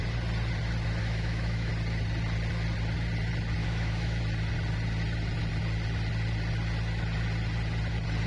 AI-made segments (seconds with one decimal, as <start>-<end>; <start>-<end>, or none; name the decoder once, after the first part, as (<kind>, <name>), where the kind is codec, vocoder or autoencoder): 1.0-1.7 (autoencoder, DAC-VAE); 3.6-4.2